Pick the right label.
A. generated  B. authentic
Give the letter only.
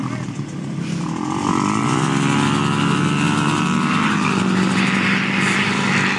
B